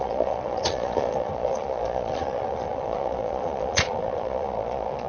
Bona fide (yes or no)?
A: no